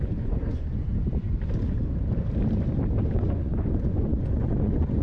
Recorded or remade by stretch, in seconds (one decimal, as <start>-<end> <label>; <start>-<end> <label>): 0.0-0.9 remade; 0.9-3.0 recorded; 3.0-5.0 remade